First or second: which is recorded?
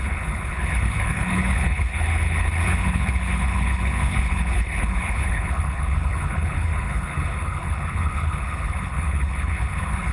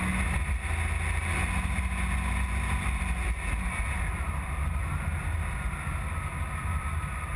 second